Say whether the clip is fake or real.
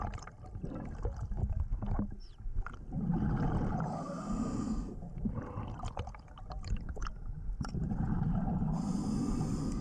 real